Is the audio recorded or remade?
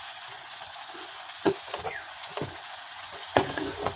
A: remade